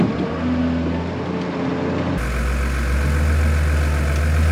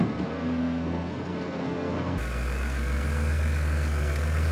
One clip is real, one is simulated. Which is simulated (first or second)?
second